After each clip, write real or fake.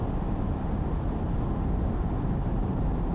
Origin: fake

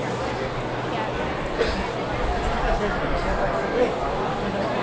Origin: real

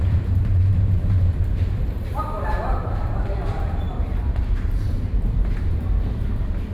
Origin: fake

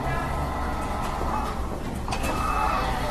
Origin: real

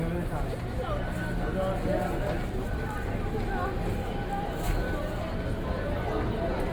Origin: real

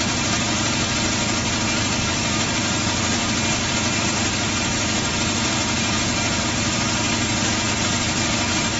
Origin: fake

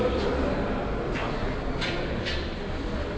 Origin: real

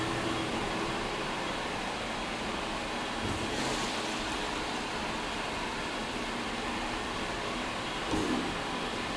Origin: fake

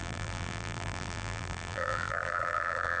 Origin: fake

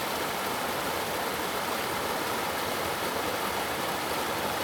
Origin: real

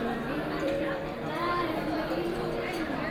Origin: fake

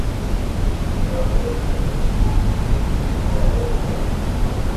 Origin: real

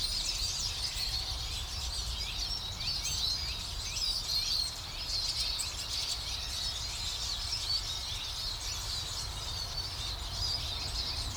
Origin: real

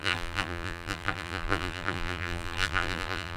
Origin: fake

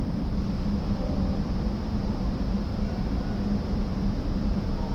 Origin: fake